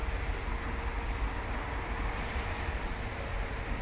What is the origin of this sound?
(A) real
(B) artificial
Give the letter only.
A